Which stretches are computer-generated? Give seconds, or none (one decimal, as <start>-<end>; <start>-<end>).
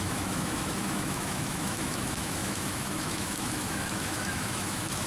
0.0-5.1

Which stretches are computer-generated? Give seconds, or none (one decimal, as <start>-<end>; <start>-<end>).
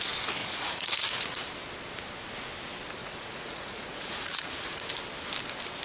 0.4-1.5; 3.0-4.9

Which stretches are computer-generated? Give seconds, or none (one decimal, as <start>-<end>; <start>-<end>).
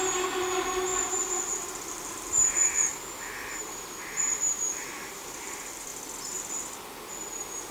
0.0-0.9; 1.9-2.9; 3.6-5.9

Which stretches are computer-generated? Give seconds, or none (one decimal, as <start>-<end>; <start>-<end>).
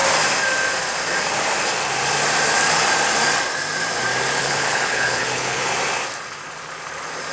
4.4-5.7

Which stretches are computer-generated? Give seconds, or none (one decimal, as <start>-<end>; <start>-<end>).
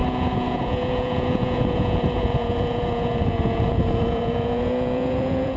0.0-5.6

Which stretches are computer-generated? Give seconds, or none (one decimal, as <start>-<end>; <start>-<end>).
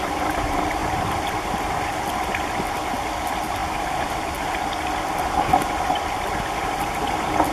none